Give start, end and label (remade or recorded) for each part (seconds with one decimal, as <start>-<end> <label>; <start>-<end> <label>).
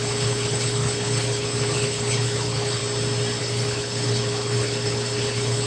0.0-2.8 remade; 2.8-3.4 recorded; 3.4-5.7 remade